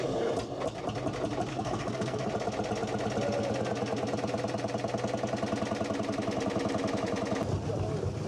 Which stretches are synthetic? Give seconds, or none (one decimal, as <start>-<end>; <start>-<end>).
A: 1.5-2.3